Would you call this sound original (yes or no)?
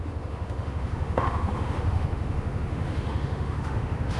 no